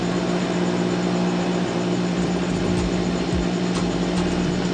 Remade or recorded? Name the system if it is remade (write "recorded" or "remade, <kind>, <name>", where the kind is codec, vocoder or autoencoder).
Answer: recorded